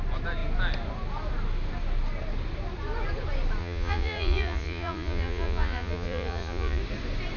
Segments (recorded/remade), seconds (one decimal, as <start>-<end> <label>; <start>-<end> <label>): 0.0-3.6 recorded; 3.6-6.8 remade; 6.8-7.4 recorded